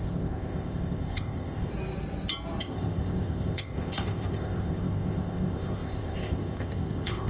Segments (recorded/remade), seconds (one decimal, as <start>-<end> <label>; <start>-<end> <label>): 0.0-1.7 remade; 1.7-2.6 recorded; 2.6-7.3 remade